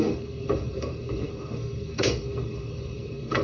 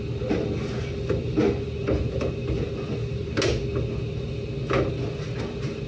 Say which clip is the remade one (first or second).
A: first